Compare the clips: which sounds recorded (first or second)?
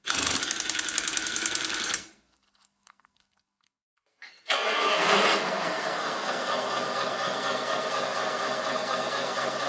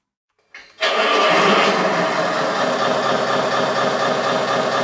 second